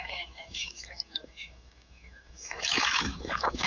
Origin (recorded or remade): remade